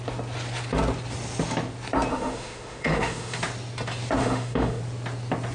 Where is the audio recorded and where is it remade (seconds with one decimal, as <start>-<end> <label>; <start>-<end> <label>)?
0.0-2.1 recorded; 2.1-3.4 remade; 3.4-4.2 recorded; 4.2-4.8 remade; 4.8-5.5 recorded